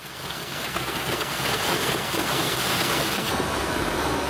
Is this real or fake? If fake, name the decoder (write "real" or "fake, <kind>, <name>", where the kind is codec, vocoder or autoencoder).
fake, codec, SNAC